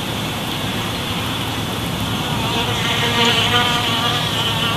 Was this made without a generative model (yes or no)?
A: no